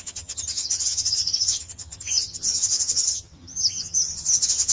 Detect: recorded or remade remade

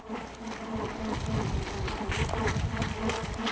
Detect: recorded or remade recorded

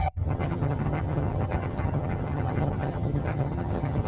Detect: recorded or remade remade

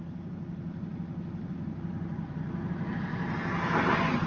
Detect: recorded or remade recorded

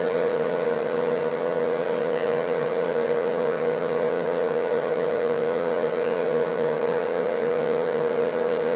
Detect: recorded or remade remade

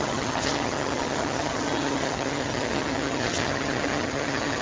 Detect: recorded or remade remade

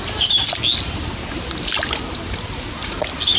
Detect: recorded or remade recorded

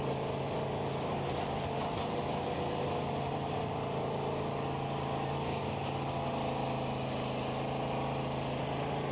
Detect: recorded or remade recorded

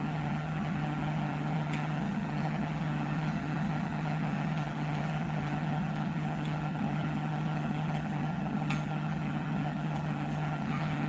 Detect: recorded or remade remade